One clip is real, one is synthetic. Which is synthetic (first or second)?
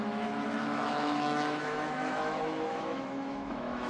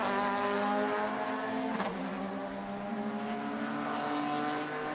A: first